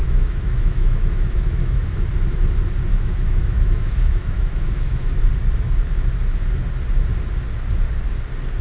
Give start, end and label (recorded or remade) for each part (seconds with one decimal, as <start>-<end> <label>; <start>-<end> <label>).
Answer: 0.0-2.1 remade; 2.1-2.9 recorded; 2.9-5.2 remade; 5.2-8.6 recorded